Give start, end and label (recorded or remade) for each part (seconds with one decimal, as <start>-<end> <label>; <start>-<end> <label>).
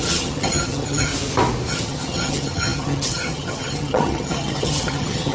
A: 0.0-1.1 remade; 1.1-1.7 recorded; 1.7-5.3 remade